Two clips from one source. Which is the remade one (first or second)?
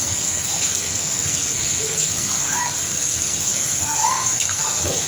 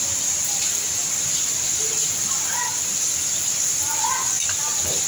first